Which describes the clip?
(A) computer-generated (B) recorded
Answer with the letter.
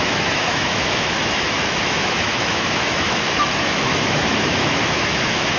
A